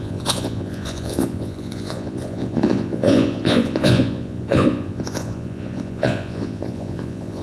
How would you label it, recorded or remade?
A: remade